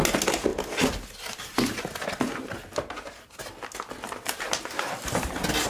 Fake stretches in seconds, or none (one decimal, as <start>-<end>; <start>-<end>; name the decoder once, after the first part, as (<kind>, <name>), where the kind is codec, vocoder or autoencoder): none